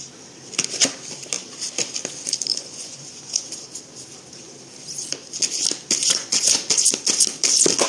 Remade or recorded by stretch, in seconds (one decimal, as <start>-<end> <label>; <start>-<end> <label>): 0.0-2.5 recorded; 2.5-3.5 remade; 3.5-6.0 recorded; 6.0-6.6 remade; 6.6-7.9 recorded